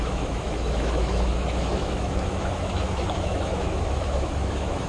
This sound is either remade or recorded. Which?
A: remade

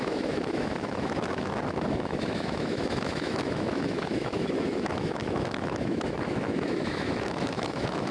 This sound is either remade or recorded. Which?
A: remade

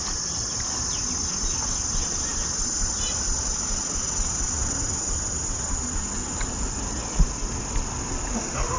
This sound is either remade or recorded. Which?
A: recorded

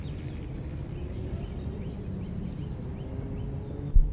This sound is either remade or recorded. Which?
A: recorded